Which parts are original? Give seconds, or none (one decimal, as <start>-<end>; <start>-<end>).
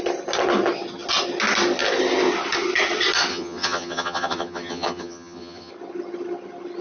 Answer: 0.0-3.3; 5.7-6.8